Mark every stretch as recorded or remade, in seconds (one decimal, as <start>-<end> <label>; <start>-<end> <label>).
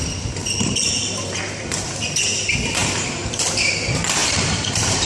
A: 0.0-0.4 recorded; 0.4-2.0 remade; 2.0-2.8 recorded; 2.8-3.8 remade; 3.8-4.2 recorded; 4.2-5.1 remade